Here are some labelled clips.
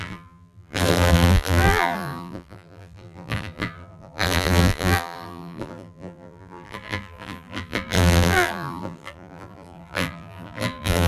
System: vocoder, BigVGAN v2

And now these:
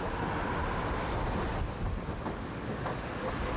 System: none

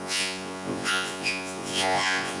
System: vocoder, Vocos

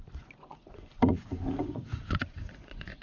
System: vocoder, Vocos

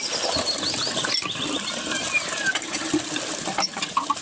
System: none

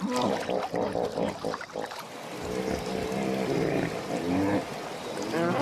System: none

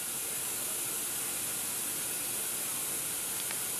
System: none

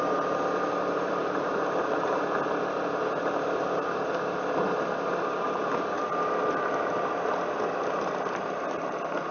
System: none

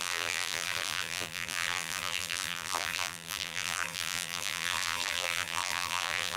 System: vocoder, BigVGAN v2